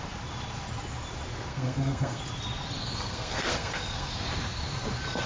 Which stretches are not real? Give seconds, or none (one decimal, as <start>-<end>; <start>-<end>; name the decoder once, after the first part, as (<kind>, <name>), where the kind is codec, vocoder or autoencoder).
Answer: 1.5-2.2 (codec, SNAC); 2.8-4.1